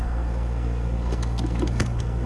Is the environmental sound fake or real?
fake